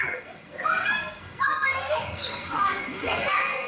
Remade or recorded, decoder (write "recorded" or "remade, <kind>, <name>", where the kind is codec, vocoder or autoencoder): remade, codec, SNAC